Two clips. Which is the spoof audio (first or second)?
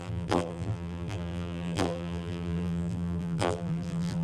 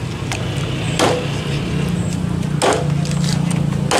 first